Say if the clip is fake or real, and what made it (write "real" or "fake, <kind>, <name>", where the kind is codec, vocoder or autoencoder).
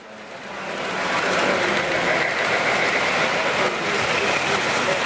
real